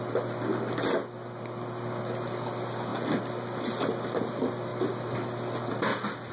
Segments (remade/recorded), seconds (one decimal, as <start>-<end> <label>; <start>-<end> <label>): 0.0-6.3 recorded